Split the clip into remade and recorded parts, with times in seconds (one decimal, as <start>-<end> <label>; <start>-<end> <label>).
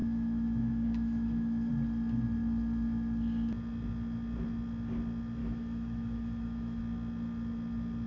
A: 0.0-1.7 remade; 1.7-5.4 recorded; 5.4-6.8 remade; 6.8-8.1 recorded